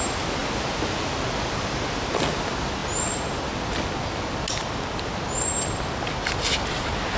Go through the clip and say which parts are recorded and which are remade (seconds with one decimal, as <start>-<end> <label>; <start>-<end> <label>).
0.0-7.2 recorded